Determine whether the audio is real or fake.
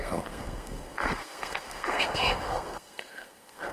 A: fake